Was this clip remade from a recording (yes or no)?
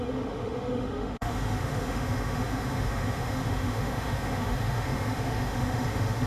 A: yes